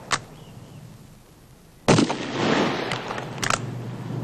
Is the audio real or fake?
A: real